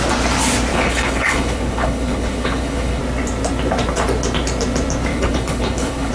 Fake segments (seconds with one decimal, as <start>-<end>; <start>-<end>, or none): 0.7-3.0; 5.1-6.1